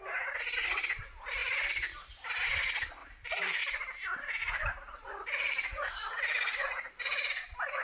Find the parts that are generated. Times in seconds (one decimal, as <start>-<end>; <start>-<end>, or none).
3.0-3.6; 4.4-7.8